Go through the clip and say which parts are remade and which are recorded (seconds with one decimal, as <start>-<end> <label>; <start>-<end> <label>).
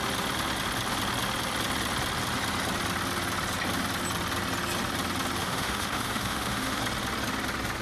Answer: 0.0-5.4 recorded; 5.4-6.8 remade; 6.8-7.8 recorded